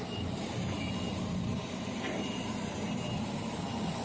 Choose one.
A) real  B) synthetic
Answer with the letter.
A